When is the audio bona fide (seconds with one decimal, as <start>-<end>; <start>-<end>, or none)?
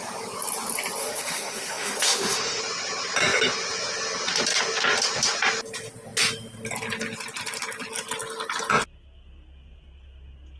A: 0.0-1.0; 2.6-10.6